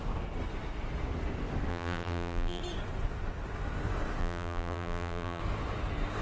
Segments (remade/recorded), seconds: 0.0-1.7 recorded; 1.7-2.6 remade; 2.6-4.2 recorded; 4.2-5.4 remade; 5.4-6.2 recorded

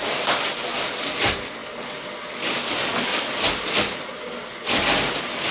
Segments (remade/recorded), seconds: 0.0-5.5 recorded

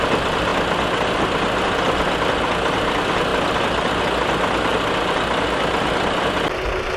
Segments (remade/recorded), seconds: 0.0-7.0 recorded

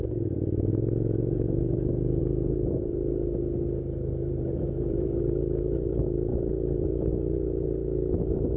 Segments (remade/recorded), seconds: 0.0-2.2 remade; 2.2-4.6 recorded; 4.6-6.3 remade; 6.3-6.9 recorded; 6.9-8.6 remade

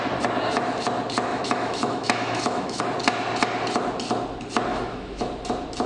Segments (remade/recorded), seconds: 0.0-1.3 recorded; 1.3-2.8 remade; 2.8-4.7 recorded; 4.7-5.2 remade; 5.2-5.9 recorded